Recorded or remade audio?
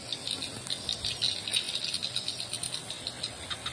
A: recorded